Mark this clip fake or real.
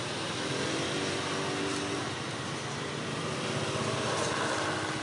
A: real